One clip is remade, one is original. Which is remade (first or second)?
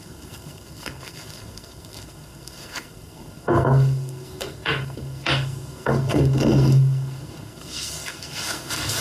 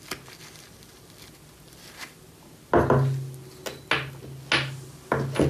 first